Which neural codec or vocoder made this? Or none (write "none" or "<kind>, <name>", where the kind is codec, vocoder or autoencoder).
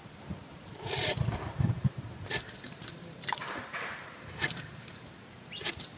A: vocoder, BigVGAN v2